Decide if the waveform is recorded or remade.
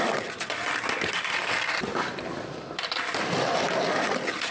remade